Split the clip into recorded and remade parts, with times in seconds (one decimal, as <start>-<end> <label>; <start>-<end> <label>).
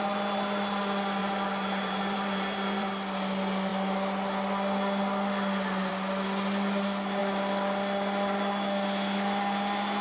0.0-1.2 recorded; 1.2-2.9 remade; 2.9-10.0 recorded